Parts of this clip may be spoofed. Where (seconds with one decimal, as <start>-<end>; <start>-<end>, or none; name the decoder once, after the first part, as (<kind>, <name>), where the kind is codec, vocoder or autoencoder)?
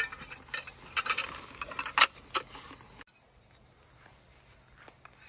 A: none